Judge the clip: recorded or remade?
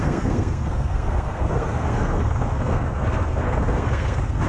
remade